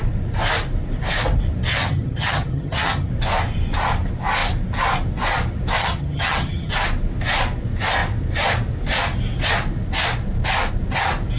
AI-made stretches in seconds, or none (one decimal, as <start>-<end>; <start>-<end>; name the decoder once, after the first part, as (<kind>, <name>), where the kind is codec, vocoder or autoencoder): 1.7-3.1 (vocoder, HiFi-GAN); 5.8-6.7

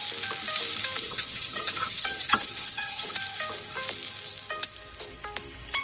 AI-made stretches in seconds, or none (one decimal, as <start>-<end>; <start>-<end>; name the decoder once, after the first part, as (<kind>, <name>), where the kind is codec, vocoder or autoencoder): 1.0-3.1 (vocoder, HiFi-GAN)

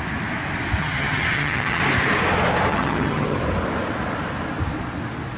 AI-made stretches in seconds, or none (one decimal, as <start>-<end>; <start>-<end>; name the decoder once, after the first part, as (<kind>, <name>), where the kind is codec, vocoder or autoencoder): 0.8-1.8 (vocoder, HiFi-GAN); 2.7-3.4